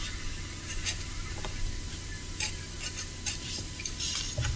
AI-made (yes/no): yes